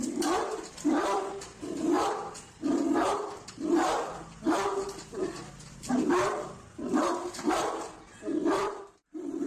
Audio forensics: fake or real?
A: fake